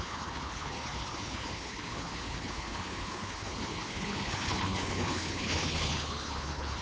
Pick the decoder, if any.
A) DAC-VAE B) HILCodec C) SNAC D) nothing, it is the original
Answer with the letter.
B